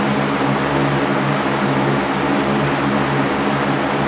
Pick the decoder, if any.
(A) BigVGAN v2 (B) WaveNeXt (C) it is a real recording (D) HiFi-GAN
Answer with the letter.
C